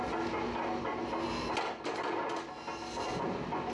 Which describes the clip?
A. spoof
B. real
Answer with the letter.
B